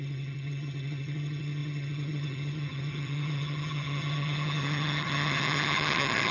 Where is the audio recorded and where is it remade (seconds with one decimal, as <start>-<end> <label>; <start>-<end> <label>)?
0.0-6.3 remade